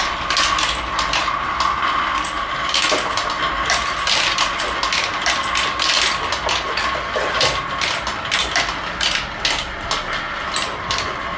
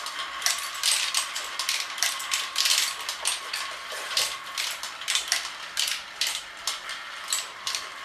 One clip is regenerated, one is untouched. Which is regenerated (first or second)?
second